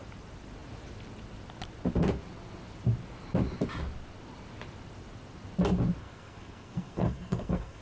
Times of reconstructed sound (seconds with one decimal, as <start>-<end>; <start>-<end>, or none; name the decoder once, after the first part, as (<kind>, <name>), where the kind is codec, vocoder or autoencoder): 6.0-7.8 (codec, SNAC)